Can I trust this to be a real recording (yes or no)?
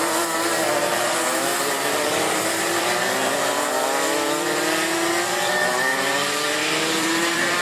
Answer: no